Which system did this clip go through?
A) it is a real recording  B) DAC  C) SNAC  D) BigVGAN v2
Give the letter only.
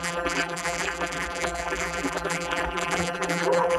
D